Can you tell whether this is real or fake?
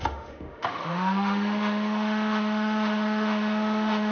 fake